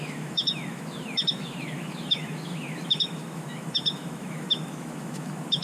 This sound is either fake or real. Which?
fake